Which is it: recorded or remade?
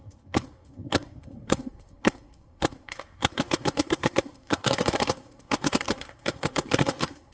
remade